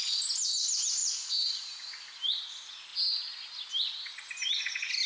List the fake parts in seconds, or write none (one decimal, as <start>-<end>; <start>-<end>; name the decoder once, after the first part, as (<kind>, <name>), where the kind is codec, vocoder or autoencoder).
none